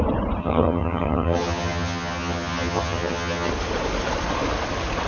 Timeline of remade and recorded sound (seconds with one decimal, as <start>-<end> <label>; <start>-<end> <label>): 0.0-0.4 recorded; 0.4-3.5 remade; 3.5-5.1 recorded